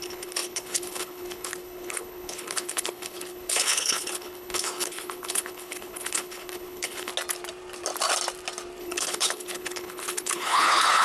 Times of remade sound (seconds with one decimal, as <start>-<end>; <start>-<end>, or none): 0.0-7.1; 8.8-11.0